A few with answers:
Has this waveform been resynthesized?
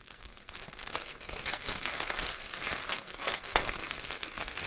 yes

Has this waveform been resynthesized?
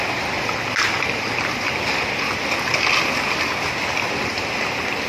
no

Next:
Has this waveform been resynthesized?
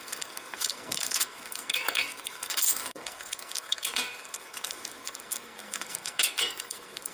yes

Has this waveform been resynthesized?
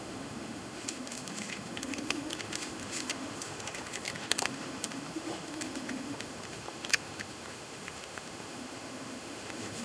yes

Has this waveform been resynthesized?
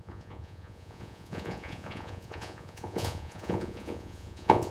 yes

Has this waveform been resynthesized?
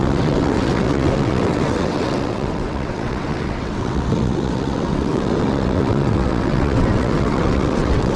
yes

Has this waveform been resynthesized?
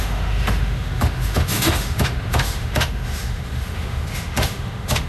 yes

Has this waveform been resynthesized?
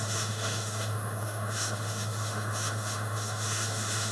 yes